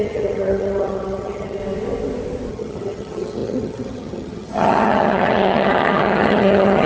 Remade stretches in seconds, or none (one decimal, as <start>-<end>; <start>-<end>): 0.0-1.6; 2.5-6.9